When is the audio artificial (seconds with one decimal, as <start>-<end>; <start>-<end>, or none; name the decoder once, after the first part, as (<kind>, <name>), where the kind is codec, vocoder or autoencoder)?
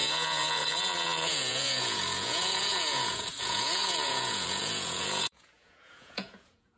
0.0-6.8 (vocoder, Vocos)